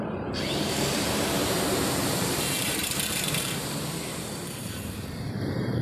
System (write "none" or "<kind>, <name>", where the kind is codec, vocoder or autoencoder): vocoder, BigVGAN v2